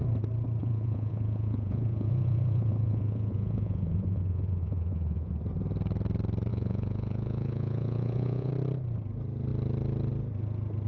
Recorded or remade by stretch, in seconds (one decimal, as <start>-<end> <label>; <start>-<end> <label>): 0.0-0.6 recorded; 0.6-5.3 remade; 5.3-6.5 recorded; 6.5-8.5 remade; 8.5-10.9 recorded